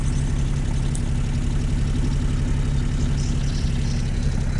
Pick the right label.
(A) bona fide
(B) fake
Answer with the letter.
A